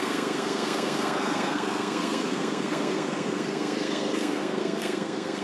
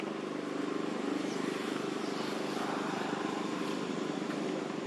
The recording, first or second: second